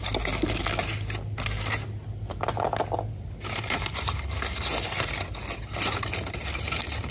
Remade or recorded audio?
recorded